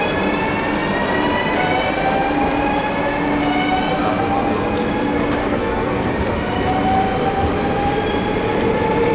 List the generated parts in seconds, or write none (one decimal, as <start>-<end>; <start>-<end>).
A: 5.4-6.1